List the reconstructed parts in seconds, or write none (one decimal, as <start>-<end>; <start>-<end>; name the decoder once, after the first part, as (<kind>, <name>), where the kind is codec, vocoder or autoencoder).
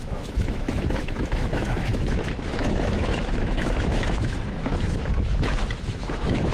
0.0-6.5 (autoencoder, DAC-VAE)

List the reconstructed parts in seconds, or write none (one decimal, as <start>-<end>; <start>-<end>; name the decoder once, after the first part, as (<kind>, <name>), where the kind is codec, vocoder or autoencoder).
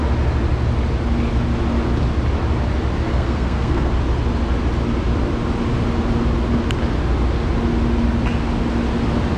3.1-3.9 (codec, SNAC)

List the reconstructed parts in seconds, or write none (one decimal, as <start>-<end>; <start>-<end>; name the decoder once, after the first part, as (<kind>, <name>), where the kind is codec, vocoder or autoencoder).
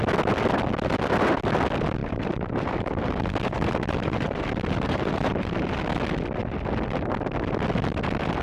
2.0-5.7 (vocoder, BigVGAN v2)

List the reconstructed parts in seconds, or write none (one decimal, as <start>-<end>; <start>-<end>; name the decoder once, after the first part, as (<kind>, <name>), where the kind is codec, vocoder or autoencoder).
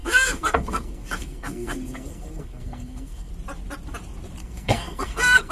0.0-3.3 (codec, SNAC); 4.4-5.5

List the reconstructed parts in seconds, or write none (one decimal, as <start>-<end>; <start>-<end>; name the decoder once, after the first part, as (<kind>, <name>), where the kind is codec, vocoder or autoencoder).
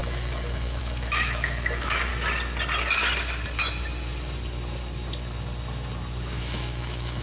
0.0-2.1 (autoencoder, DAC-VAE); 6.4-7.2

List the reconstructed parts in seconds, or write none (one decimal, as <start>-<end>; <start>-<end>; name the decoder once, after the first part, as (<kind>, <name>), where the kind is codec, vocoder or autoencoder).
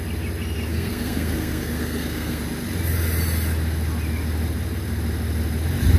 0.7-2.4 (codec, SNAC)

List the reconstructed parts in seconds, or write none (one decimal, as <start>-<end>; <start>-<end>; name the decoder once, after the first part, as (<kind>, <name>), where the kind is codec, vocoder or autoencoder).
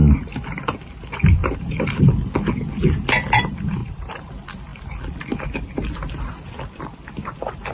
1.4-2.0 (vocoder, BigVGAN v2); 3.8-4.3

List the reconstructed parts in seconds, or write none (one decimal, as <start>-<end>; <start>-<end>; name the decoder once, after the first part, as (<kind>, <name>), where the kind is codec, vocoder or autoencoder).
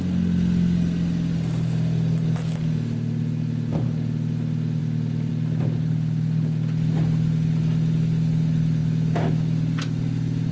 none